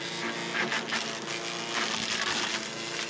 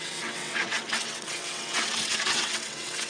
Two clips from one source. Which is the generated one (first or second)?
second